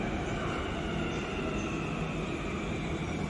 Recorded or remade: recorded